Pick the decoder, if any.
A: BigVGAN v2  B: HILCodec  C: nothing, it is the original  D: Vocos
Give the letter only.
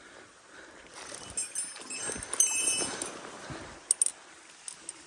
C